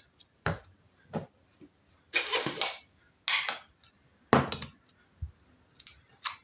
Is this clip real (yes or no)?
yes